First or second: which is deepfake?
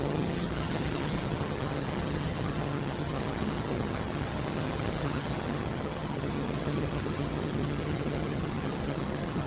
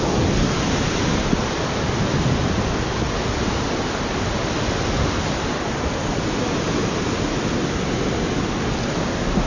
first